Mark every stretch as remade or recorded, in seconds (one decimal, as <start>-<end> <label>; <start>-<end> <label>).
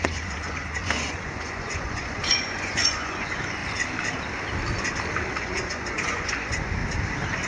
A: 0.0-3.6 remade; 3.6-5.4 recorded; 5.4-6.8 remade; 6.8-7.5 recorded